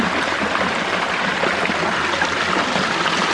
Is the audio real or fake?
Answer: real